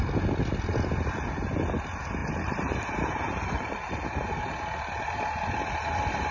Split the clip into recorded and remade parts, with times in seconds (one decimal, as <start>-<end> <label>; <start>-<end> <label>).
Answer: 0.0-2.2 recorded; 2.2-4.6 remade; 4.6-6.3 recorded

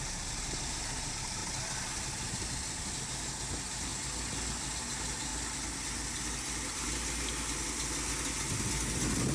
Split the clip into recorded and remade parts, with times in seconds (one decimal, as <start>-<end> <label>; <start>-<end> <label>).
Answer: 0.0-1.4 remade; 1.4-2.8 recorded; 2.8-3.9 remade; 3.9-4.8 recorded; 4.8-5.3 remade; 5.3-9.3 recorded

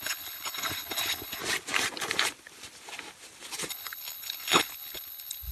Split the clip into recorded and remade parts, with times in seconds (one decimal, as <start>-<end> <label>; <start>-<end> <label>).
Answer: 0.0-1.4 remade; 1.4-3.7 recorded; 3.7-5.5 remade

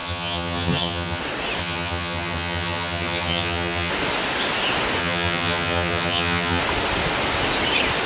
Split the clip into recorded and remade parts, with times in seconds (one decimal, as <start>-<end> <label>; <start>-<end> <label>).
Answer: 0.0-1.2 remade; 1.2-1.6 recorded; 1.6-3.9 remade; 3.9-5.0 recorded; 5.0-6.6 remade; 6.6-8.1 recorded

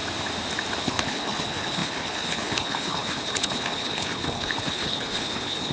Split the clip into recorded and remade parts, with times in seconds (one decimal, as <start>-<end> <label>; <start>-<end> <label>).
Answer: 0.0-0.8 recorded; 0.8-5.7 remade